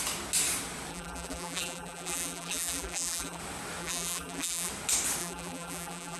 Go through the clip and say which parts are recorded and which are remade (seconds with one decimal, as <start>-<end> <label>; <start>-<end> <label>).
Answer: 0.0-0.9 recorded; 0.9-3.4 remade; 3.4-3.8 recorded; 3.8-4.7 remade; 4.7-5.2 recorded; 5.2-6.2 remade